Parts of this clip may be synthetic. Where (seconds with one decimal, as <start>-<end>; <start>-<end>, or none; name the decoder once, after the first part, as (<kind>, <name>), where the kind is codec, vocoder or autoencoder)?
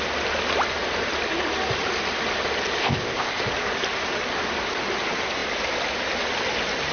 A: 2.8-3.4 (codec, ZipCodec)